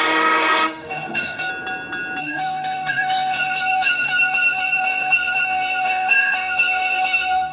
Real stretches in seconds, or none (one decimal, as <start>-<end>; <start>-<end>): 1.5-2.2